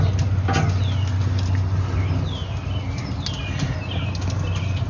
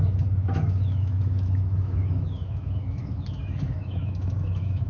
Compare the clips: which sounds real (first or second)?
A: first